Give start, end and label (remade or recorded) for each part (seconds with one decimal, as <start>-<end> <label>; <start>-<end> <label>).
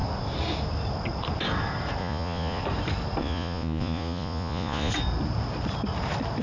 0.0-2.0 recorded; 2.0-2.6 remade; 2.6-3.2 recorded; 3.2-4.9 remade; 4.9-6.4 recorded